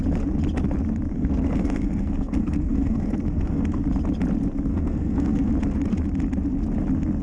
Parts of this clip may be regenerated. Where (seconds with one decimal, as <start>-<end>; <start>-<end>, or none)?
1.1-3.8; 4.7-5.5